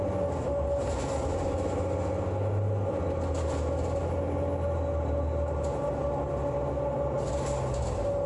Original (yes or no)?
yes